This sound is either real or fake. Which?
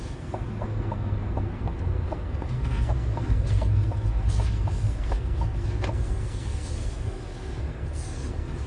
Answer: fake